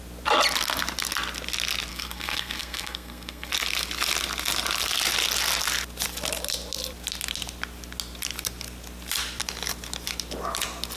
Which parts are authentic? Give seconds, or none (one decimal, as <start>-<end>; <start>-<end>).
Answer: 0.0-1.9; 3.5-11.0